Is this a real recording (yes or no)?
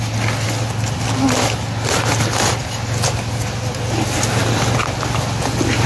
yes